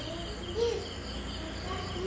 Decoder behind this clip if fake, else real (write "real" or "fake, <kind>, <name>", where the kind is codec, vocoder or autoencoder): real